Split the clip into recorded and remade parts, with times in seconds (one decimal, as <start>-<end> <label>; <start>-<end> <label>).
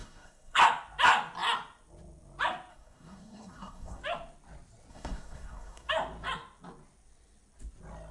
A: 0.0-0.6 remade; 0.6-2.7 recorded; 2.7-4.0 remade; 4.0-4.9 recorded; 4.9-5.9 remade; 5.9-8.1 recorded